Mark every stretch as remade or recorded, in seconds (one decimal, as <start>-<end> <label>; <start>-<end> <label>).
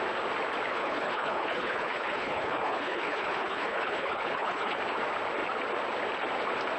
0.0-0.7 recorded; 0.7-4.8 remade; 4.8-6.8 recorded